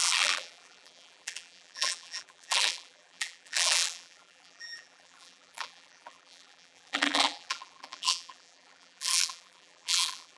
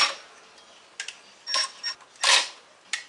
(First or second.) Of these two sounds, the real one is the second